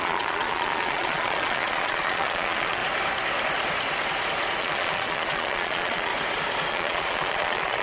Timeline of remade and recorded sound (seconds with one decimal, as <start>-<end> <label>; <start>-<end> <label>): 0.0-2.8 remade; 2.8-4.6 recorded; 4.6-6.1 remade; 6.1-6.7 recorded; 6.7-7.8 remade